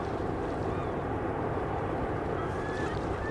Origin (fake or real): fake